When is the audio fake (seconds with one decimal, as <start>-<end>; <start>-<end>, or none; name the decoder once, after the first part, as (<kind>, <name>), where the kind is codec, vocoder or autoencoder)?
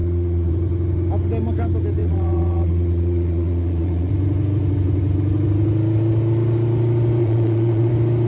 0.0-0.5 (vocoder, Vocos); 2.0-4.1; 7.2-7.9